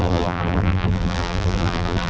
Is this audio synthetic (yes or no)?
yes